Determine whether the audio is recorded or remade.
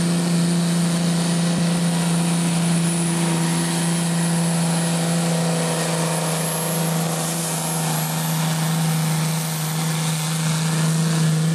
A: recorded